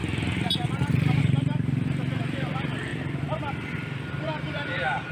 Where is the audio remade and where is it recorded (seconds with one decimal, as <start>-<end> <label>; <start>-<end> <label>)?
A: 0.0-1.2 remade; 1.2-2.9 recorded; 2.9-4.1 remade; 4.1-5.1 recorded